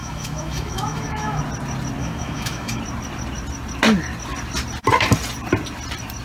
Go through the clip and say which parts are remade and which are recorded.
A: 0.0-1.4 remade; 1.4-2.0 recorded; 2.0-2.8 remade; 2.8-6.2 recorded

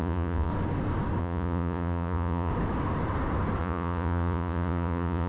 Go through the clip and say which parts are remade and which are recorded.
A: 0.0-0.5 remade; 0.5-1.2 recorded; 1.2-2.5 remade; 2.5-3.6 recorded; 3.6-5.3 remade